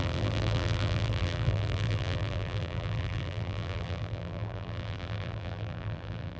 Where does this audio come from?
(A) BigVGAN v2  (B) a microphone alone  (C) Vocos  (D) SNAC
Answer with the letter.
A